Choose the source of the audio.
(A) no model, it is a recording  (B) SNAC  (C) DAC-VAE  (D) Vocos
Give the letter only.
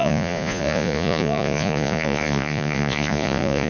D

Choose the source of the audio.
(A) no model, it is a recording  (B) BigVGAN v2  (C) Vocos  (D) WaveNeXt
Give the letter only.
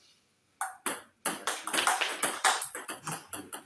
A